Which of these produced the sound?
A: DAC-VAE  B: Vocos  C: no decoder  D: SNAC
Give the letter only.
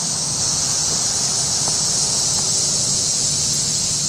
B